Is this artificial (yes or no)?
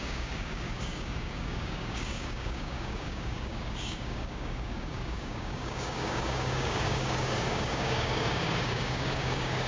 yes